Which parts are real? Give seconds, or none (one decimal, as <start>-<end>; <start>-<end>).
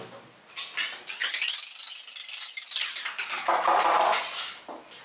0.0-5.0